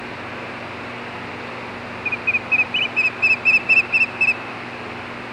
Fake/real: real